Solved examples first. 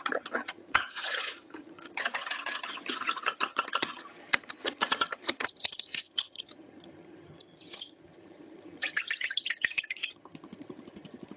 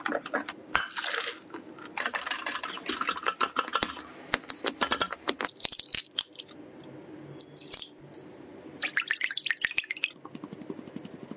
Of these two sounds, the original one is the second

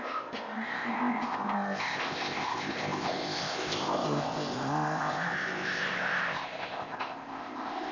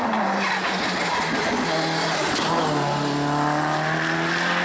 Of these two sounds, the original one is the second